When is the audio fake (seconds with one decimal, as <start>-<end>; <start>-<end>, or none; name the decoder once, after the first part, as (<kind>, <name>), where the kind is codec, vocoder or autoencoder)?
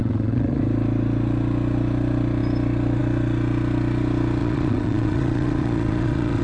0.0-0.6 (vocoder, Vocos); 4.4-6.4